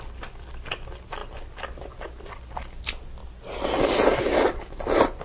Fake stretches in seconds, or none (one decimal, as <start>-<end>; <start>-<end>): none